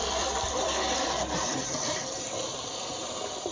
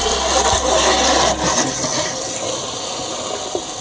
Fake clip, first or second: first